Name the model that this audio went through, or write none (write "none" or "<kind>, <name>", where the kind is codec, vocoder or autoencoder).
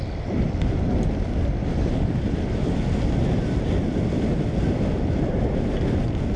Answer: none